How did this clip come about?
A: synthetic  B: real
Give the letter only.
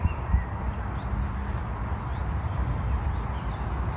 B